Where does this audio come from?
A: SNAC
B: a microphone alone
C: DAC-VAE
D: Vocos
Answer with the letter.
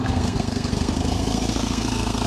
A